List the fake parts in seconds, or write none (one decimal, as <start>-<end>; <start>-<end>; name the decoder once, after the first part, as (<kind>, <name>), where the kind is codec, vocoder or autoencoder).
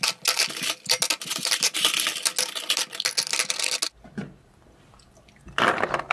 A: none